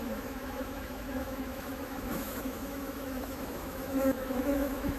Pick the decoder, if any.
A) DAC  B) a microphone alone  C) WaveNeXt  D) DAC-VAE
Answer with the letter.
D